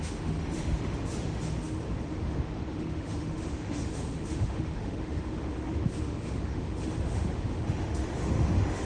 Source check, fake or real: fake